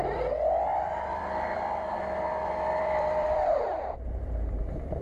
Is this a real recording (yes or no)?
no